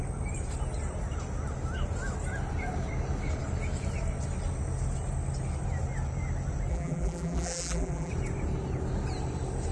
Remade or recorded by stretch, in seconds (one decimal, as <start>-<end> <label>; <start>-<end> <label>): 0.0-6.7 recorded; 6.7-8.1 remade; 8.1-9.7 recorded